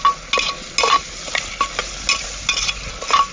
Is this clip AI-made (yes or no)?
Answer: no